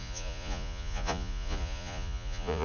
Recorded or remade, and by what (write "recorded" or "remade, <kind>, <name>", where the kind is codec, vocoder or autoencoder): remade, vocoder, Vocos